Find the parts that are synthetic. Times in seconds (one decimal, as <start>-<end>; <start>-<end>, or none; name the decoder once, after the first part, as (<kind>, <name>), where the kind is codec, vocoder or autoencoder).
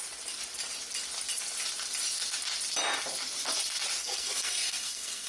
4.0-5.3 (codec, SNAC)